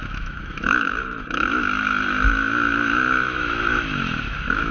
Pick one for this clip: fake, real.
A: fake